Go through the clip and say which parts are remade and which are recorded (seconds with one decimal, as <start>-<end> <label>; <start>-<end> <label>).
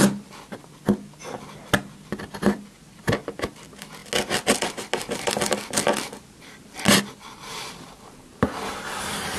0.0-9.4 recorded